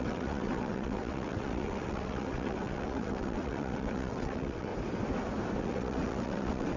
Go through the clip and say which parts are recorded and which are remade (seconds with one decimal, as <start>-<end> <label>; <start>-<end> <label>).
0.0-4.7 remade; 4.7-5.6 recorded; 5.6-6.8 remade